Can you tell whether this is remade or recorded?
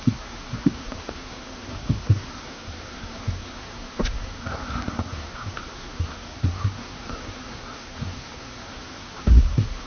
remade